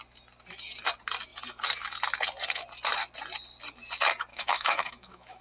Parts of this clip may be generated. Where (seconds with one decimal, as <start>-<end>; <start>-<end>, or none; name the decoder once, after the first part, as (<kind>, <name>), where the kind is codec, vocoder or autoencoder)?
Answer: 4.3-5.4 (autoencoder, DAC-VAE)